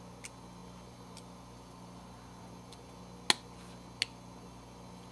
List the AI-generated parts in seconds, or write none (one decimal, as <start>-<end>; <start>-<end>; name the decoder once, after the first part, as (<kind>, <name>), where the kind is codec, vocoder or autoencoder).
none